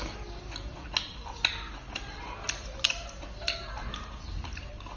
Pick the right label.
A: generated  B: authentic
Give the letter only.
B